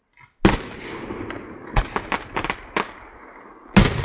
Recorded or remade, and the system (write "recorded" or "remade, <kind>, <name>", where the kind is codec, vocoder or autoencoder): recorded